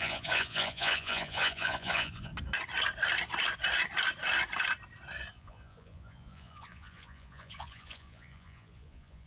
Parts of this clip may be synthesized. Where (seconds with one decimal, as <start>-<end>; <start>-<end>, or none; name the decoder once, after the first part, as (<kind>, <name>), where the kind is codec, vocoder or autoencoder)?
0.0-2.3 (vocoder, Vocos); 5.3-9.3